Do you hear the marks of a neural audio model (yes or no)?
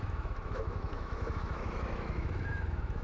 yes